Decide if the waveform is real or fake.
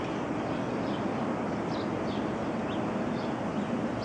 real